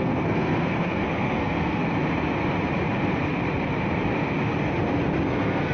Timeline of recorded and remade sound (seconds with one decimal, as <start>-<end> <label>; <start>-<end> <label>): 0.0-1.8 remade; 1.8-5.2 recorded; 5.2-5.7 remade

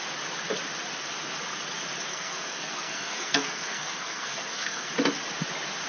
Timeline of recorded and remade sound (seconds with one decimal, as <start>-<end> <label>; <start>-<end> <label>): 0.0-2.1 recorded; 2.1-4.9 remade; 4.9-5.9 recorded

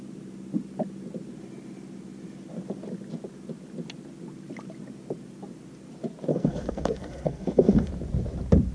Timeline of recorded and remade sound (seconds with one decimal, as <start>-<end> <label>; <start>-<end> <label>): 0.0-6.3 recorded; 6.3-7.9 remade; 7.9-8.7 recorded